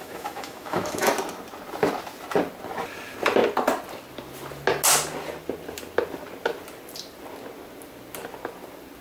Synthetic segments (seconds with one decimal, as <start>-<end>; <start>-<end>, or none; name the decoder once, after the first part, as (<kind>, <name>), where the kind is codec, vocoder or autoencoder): 0.0-1.1 (autoencoder, DAC-VAE)